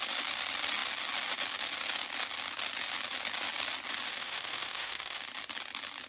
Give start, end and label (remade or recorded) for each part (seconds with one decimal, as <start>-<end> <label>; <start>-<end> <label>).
0.0-4.1 recorded; 4.1-5.2 remade; 5.2-6.1 recorded